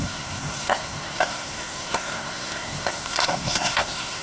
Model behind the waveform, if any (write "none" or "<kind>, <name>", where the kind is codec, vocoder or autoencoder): codec, SNAC